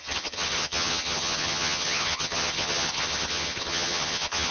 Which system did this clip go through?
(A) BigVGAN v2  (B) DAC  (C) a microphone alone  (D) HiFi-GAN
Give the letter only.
D